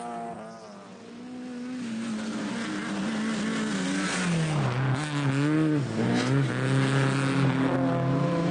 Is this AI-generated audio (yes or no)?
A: no